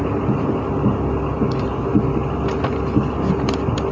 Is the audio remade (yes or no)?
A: no